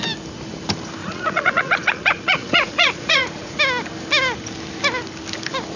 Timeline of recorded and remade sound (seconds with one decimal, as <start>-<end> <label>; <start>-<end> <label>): 0.0-1.0 recorded; 1.0-3.6 remade; 3.6-5.8 recorded